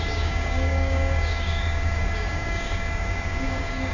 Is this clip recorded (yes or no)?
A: no